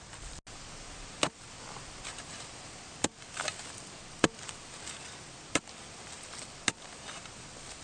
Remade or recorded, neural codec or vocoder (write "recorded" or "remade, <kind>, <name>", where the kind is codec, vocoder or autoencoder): recorded